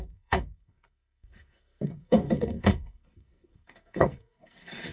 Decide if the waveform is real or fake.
fake